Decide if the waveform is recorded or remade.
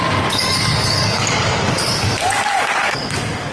remade